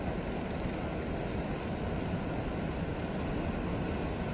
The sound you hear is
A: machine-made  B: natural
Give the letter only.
B